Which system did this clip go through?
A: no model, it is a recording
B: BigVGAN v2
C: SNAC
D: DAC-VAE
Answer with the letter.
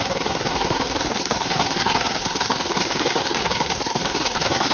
C